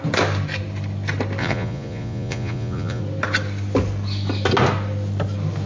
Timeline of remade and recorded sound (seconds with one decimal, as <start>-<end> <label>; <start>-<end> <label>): 0.0-1.4 recorded; 1.4-3.0 remade; 3.0-5.7 recorded